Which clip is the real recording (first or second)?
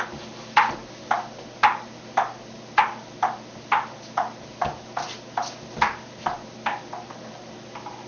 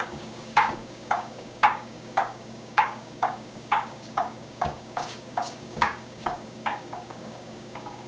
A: first